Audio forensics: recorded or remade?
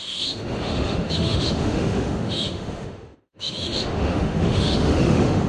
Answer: remade